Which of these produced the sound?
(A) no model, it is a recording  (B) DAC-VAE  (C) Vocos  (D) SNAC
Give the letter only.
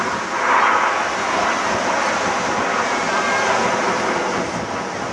A